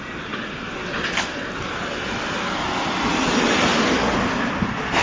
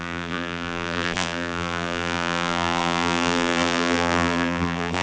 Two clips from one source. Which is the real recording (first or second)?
first